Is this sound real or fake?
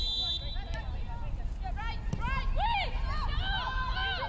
real